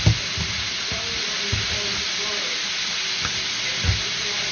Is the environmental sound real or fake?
real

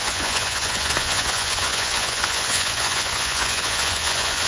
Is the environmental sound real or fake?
fake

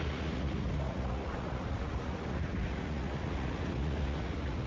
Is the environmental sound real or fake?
fake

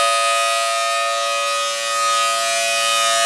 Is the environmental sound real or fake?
real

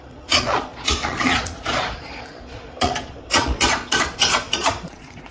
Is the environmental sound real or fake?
fake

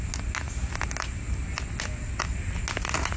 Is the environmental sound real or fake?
real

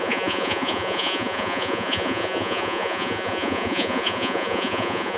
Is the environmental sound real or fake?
fake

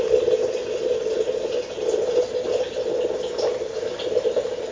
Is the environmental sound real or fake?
real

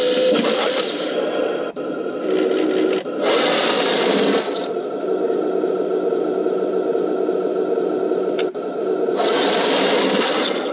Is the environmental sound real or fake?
real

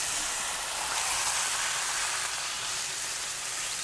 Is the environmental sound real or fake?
real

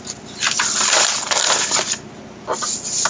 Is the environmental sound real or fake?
real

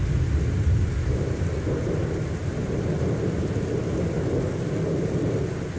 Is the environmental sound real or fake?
real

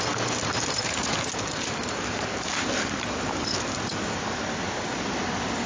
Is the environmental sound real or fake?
real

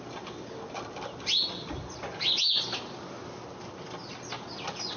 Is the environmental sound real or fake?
real